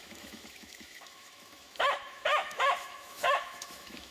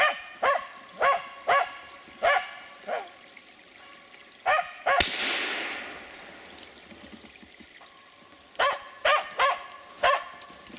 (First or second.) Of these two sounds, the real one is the second